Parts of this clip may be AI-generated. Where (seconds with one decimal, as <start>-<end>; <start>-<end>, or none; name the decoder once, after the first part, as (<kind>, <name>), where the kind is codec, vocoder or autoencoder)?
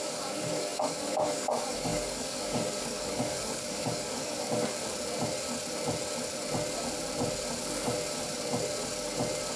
0.0-4.8 (codec, DAC)